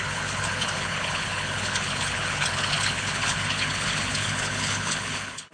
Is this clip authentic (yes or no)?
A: no